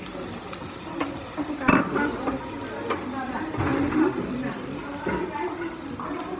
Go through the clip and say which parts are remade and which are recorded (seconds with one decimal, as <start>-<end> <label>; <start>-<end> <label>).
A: 0.0-6.4 recorded